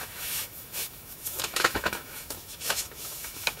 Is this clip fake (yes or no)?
yes